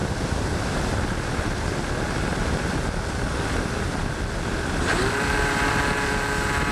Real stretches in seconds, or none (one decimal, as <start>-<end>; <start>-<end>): 1.7-2.3; 5.8-6.7